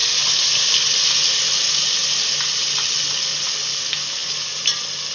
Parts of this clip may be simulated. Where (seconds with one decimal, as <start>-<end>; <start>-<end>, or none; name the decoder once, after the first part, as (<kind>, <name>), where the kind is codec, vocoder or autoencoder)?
none